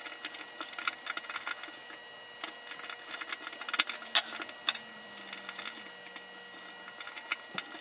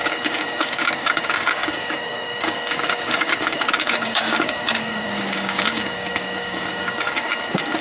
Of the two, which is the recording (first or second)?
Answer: first